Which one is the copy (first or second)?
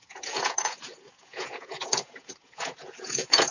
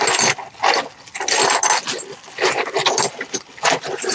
first